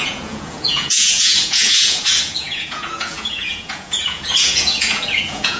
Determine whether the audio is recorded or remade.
remade